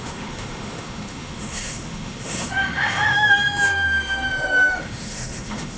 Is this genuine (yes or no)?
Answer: no